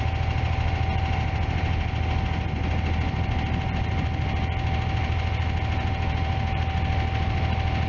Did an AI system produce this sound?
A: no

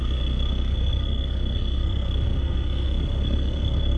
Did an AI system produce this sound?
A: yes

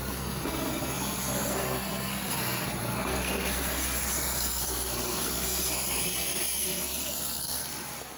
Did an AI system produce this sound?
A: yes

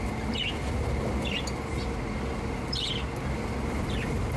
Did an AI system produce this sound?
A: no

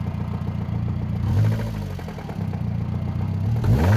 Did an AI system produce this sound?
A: no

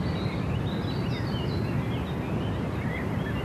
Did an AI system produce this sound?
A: no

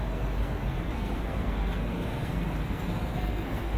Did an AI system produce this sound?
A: yes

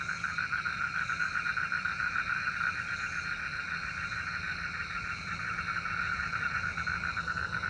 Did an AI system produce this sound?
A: no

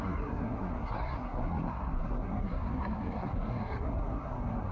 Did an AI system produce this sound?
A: yes